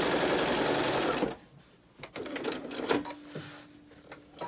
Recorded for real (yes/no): yes